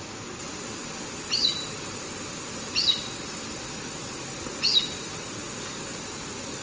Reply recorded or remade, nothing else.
recorded